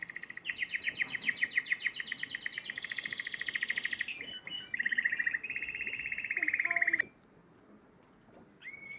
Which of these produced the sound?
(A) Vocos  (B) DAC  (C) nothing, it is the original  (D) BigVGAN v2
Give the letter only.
C